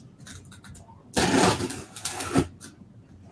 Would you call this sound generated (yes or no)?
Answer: no